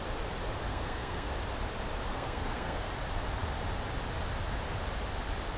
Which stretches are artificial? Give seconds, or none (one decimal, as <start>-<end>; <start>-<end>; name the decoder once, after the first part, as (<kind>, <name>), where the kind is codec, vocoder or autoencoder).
0.7-1.3 (codec, SNAC); 2.1-2.9